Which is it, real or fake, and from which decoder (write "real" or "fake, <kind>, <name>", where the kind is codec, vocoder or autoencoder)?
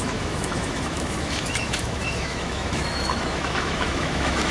fake, autoencoder, DAC-VAE